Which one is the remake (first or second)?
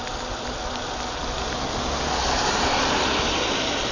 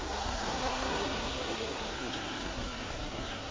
second